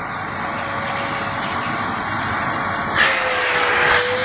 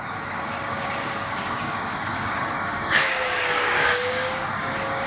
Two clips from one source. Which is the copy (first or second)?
second